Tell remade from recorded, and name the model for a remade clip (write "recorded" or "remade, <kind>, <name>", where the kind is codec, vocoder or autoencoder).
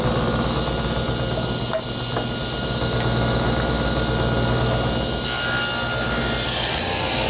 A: recorded